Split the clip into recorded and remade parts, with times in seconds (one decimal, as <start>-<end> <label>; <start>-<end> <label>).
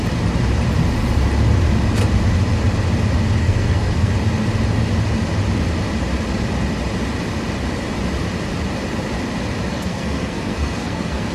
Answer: 0.0-3.4 recorded; 3.4-4.1 remade; 4.1-9.7 recorded; 9.7-11.3 remade